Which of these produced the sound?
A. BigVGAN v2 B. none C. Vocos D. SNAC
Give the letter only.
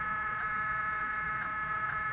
C